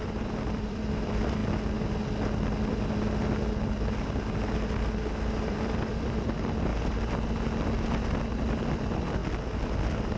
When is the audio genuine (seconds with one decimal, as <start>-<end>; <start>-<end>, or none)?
1.4-5.5; 6.7-7.9; 9.2-10.2